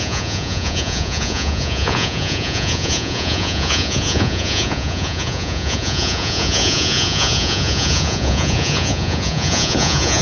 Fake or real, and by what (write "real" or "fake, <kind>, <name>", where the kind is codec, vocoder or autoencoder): fake, vocoder, Vocos